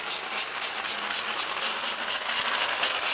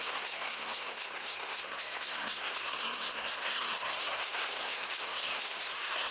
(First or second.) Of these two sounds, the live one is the first